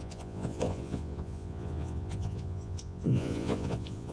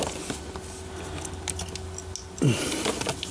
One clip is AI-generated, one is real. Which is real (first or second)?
second